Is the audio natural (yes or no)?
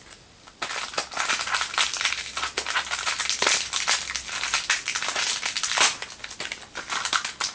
yes